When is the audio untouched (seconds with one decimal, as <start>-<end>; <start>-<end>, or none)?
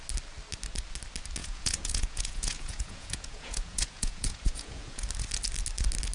0.0-1.4; 5.1-6.1